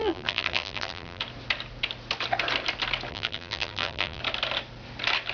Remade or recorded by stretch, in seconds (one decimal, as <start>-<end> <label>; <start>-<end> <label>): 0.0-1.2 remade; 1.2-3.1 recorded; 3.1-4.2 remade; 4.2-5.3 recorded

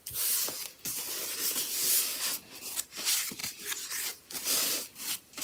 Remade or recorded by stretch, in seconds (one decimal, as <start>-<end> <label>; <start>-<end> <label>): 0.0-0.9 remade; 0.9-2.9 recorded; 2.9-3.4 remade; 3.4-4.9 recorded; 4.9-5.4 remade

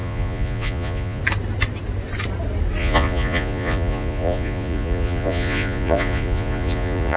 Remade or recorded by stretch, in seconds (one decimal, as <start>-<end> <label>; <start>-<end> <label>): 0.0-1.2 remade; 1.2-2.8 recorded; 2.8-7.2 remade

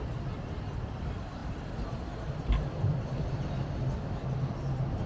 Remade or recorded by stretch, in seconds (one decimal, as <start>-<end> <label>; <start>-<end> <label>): 0.0-5.1 recorded

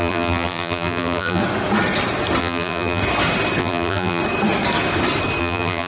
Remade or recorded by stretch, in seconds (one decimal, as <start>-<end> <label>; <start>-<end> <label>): 0.0-1.4 remade; 1.4-2.4 recorded; 2.4-3.0 remade; 3.0-3.6 recorded; 3.6-4.2 remade; 4.2-5.4 recorded; 5.4-5.9 remade

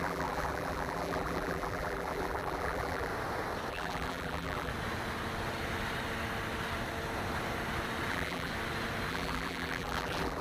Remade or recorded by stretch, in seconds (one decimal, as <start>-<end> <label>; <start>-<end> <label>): 0.0-3.1 remade; 3.1-3.7 recorded; 3.7-4.7 remade; 4.7-8.1 recorded; 8.1-8.5 remade; 8.5-9.1 recorded; 9.1-10.4 remade

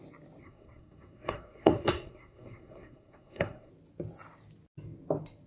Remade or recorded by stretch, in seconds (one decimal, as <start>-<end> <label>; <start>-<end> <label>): 0.0-0.4 recorded; 0.4-3.7 remade; 3.7-5.5 recorded

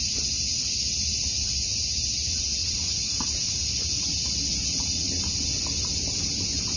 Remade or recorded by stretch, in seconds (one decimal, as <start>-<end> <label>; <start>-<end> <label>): 0.0-2.6 recorded; 2.6-3.2 remade; 3.2-4.6 recorded; 4.6-5.2 remade; 5.2-6.8 recorded